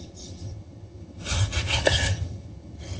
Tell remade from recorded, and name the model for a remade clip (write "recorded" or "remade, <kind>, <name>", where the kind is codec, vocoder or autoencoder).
remade, vocoder, HiFi-GAN